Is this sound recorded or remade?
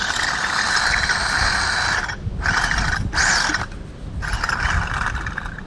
recorded